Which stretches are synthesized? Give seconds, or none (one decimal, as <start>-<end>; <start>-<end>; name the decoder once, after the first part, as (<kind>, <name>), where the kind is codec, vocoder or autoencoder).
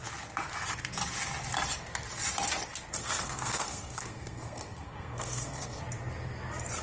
3.0-5.8 (codec, SNAC)